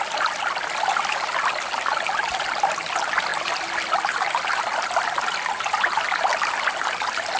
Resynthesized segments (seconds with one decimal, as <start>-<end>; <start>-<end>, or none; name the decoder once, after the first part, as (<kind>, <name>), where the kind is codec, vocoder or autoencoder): none